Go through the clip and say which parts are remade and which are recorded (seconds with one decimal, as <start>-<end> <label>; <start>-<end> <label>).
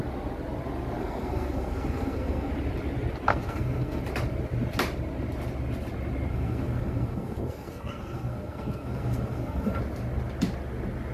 0.0-1.0 recorded; 1.0-2.5 remade; 2.5-3.3 recorded; 3.3-4.0 remade; 4.0-6.3 recorded; 6.3-9.8 remade; 9.8-11.1 recorded